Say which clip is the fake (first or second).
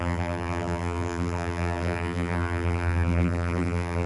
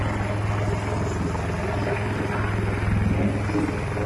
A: first